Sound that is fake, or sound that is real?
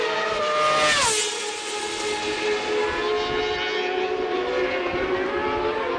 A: real